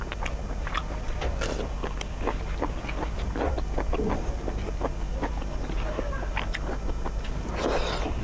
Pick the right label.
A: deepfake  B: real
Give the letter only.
B